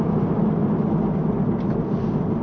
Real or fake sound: real